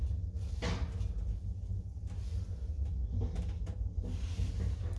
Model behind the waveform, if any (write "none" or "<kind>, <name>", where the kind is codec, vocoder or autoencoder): none